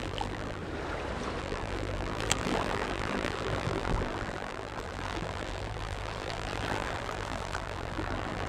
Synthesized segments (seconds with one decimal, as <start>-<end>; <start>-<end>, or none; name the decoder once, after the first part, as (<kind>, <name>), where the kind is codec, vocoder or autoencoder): 0.0-0.6 (vocoder, BigVGAN v2); 1.4-8.5